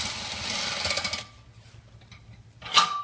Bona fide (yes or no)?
yes